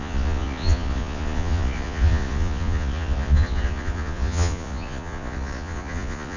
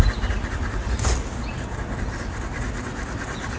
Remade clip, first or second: first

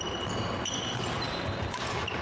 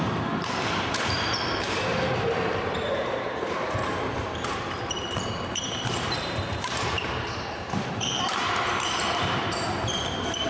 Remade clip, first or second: second